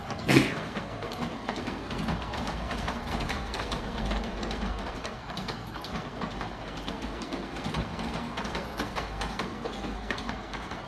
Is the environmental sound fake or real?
fake